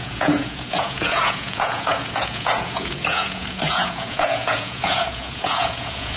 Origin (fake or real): fake